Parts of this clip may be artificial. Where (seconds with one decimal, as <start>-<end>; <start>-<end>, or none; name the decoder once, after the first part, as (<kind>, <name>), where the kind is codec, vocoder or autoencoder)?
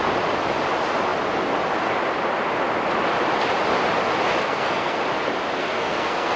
4.4-5.0 (codec, SNAC); 5.6-6.4